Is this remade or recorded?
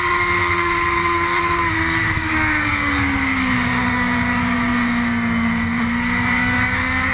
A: remade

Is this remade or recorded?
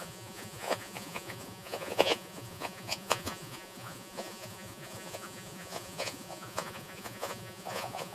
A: remade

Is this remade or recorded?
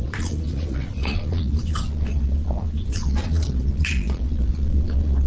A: remade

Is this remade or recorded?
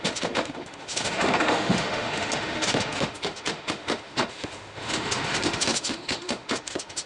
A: remade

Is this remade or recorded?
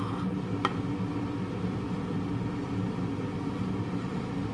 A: recorded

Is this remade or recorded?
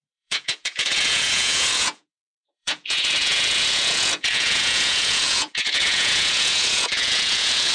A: remade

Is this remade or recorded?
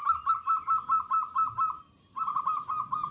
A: recorded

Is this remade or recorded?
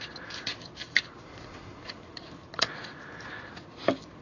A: recorded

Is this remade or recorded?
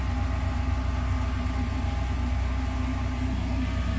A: recorded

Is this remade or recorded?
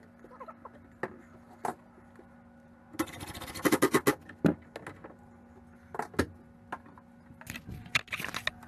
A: recorded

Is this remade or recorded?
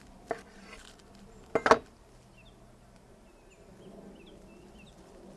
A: recorded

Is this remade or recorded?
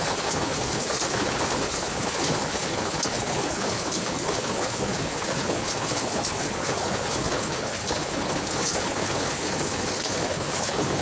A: remade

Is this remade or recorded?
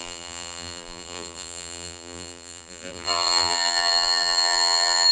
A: remade